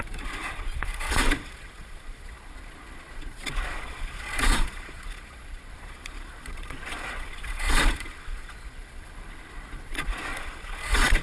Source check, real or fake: fake